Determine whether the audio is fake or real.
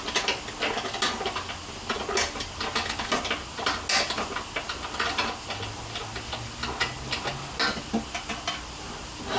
real